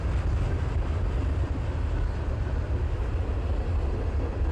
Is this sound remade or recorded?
recorded